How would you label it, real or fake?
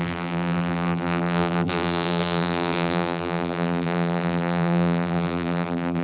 fake